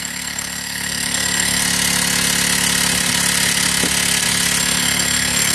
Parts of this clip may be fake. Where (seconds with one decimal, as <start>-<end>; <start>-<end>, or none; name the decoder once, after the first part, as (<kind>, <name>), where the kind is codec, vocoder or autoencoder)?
0.0-1.6 (codec, SNAC); 4.6-5.5